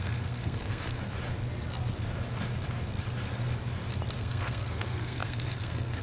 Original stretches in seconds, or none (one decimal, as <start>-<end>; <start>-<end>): 1.0-4.2